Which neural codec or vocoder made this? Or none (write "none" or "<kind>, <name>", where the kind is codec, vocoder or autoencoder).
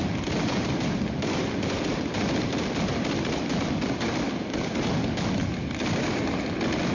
none